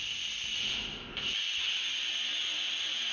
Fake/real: real